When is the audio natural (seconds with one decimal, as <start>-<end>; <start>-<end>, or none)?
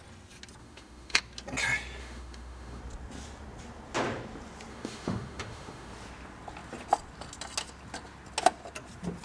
0.0-0.6; 1.2-2.0; 2.8-4.7; 5.9-9.2